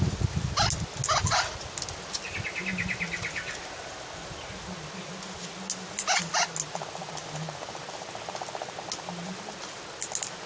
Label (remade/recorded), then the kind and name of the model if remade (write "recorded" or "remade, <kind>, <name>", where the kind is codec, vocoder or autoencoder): recorded